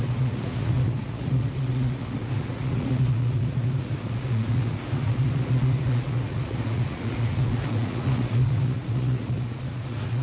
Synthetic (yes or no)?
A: yes